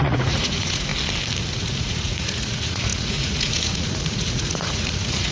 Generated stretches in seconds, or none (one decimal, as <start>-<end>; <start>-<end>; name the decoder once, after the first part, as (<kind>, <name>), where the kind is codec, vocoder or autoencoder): 0.0-0.9 (vocoder, Vocos); 1.5-5.3